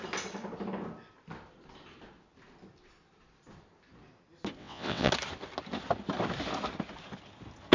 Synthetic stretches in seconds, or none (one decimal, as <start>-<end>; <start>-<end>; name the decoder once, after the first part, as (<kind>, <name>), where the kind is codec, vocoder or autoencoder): 4.6-5.1 (vocoder, WaveNeXt)